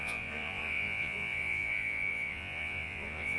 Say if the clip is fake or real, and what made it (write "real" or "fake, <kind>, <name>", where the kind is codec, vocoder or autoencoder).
fake, vocoder, Vocos